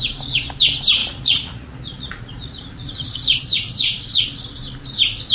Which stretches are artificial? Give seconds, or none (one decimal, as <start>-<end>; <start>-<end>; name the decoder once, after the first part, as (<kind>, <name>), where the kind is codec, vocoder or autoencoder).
1.0-4.2 (vocoder, Vocos)